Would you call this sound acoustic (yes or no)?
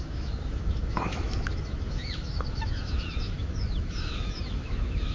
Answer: no